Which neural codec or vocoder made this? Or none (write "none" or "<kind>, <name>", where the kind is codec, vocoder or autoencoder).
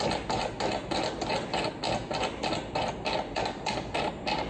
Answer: none